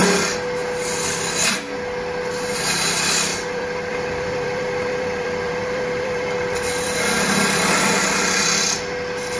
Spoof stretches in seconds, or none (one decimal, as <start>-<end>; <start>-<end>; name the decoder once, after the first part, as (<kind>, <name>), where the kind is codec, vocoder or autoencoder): 3.3-8.1 (vocoder, BigVGAN v2)